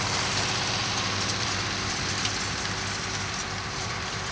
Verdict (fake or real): fake